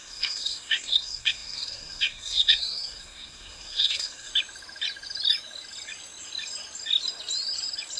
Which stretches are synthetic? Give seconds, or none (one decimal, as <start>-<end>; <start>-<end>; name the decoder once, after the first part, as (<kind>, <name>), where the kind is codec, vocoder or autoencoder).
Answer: 0.0-4.3 (codec, SNAC)